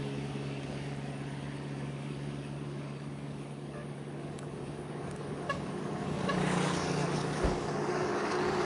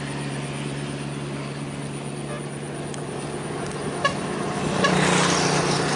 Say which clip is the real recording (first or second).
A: second